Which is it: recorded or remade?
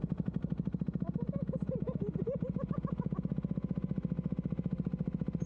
recorded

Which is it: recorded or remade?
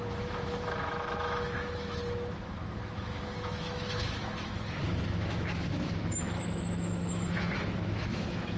remade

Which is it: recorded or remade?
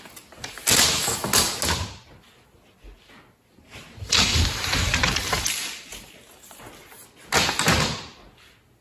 recorded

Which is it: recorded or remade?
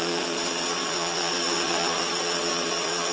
remade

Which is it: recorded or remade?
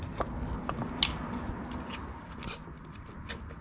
recorded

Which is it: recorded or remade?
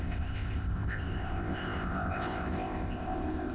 remade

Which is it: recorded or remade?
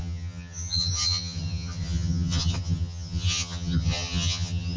remade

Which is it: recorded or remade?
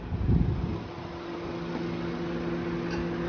recorded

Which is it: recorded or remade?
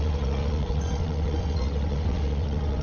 remade